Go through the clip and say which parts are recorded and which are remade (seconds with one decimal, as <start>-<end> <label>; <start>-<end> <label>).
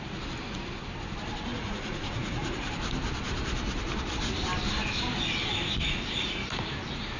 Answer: 0.0-1.5 recorded; 1.5-2.7 remade; 2.7-7.2 recorded